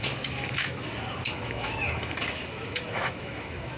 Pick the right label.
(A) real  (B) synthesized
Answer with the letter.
B